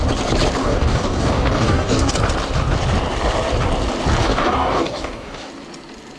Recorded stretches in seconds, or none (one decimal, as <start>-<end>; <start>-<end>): 0.0-0.6; 2.1-4.2; 5.5-6.2